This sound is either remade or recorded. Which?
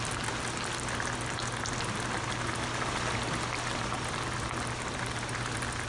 recorded